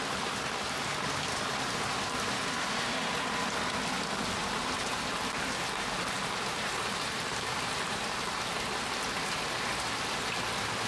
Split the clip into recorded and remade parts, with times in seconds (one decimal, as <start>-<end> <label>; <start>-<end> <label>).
0.0-4.4 recorded; 4.4-8.0 remade; 8.0-10.9 recorded